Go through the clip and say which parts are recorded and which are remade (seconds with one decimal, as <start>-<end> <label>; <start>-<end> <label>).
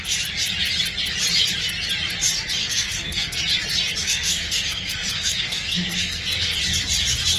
0.0-2.6 recorded; 2.6-3.4 remade; 3.4-4.0 recorded; 4.0-6.6 remade; 6.6-7.4 recorded